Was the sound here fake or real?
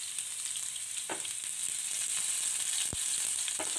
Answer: real